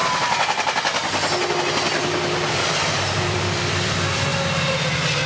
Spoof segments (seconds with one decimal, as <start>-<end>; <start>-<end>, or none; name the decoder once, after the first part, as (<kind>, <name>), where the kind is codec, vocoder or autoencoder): 2.5-4.3 (vocoder, BigVGAN v2)